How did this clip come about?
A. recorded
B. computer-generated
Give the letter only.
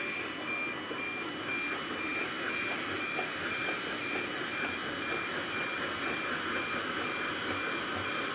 A